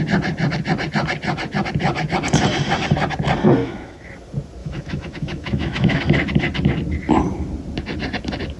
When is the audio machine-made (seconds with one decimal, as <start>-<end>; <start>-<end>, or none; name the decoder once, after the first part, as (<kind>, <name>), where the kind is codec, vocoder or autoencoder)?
3.6-4.1 (autoencoder, DAC-VAE); 4.6-6.0